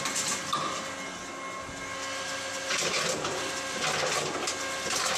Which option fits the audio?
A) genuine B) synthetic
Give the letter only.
A